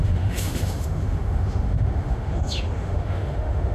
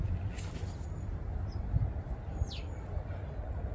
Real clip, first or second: second